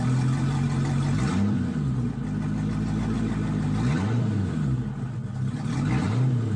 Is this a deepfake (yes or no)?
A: no